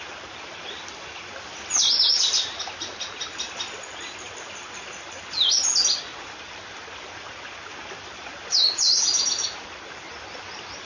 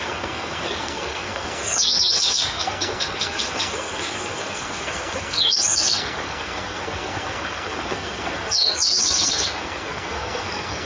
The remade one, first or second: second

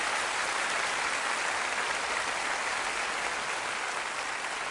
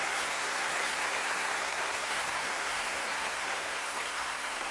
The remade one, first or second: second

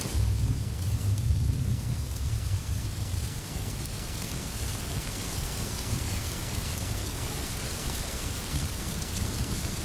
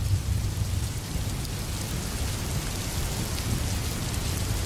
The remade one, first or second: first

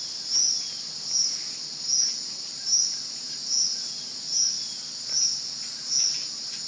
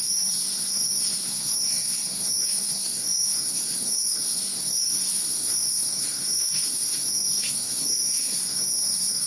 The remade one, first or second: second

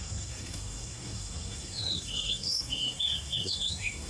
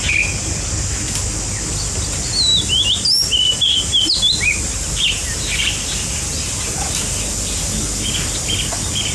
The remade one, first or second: first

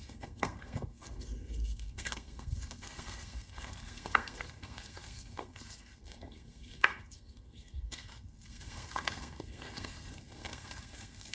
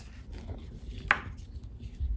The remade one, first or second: first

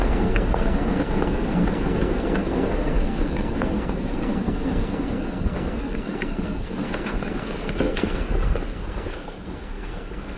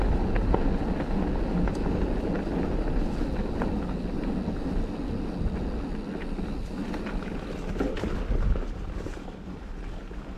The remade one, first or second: first